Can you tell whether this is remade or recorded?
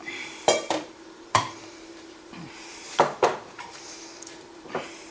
remade